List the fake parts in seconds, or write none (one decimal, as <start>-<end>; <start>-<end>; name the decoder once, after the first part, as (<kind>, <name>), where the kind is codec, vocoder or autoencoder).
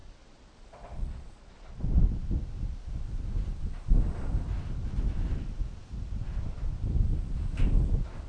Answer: 0.0-1.8 (vocoder, Vocos)